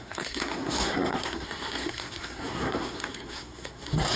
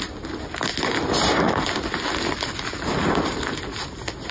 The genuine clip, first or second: second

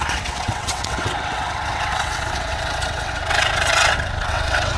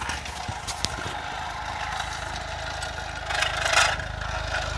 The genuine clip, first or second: second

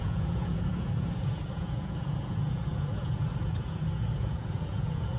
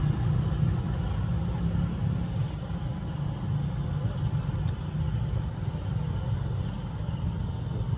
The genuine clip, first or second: second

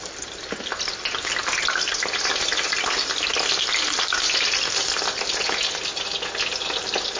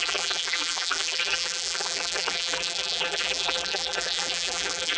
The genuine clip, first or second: first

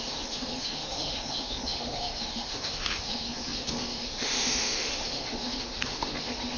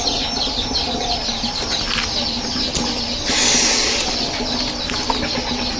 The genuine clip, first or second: second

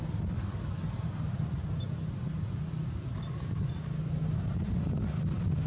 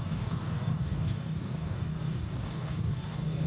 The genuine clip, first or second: first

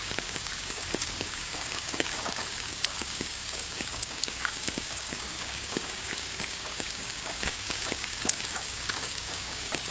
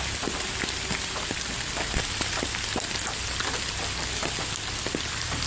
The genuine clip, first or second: second